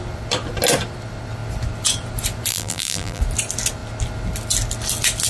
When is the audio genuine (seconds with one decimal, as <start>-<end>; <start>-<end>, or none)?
0.0-2.5; 3.2-5.3